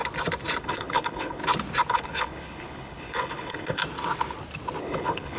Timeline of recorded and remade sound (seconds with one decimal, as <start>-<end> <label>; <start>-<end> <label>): 0.0-0.6 recorded; 0.6-1.4 remade; 1.4-1.9 recorded; 1.9-3.8 remade; 3.8-4.8 recorded; 4.8-5.4 remade